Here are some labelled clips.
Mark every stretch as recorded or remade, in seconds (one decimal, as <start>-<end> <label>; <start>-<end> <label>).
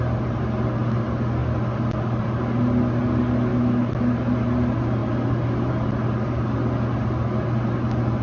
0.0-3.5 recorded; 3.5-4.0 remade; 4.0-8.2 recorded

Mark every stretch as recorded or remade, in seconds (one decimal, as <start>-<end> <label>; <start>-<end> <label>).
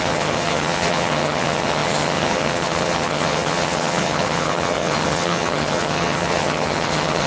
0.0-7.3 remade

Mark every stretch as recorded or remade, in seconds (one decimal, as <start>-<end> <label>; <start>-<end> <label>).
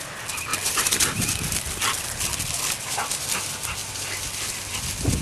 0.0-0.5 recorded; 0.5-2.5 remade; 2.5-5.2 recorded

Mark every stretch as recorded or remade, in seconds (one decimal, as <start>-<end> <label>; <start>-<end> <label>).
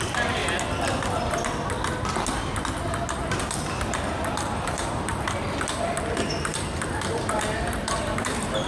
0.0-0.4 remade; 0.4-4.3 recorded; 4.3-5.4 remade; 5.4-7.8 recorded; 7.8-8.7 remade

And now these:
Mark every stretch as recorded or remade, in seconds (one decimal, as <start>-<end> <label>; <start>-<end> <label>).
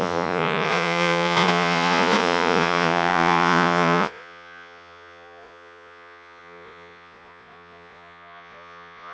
0.0-9.1 remade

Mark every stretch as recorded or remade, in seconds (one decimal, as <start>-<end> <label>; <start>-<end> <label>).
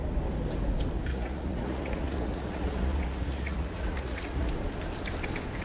0.0-1.1 recorded; 1.1-4.5 remade; 4.5-5.6 recorded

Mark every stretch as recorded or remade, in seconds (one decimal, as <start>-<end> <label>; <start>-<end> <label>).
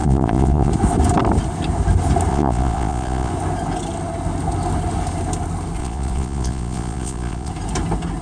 0.0-0.7 remade; 0.7-2.3 recorded; 2.3-3.3 remade; 3.3-5.8 recorded; 5.8-7.5 remade; 7.5-8.2 recorded